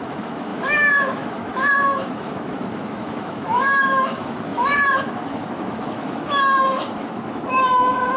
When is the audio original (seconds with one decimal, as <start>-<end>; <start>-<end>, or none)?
none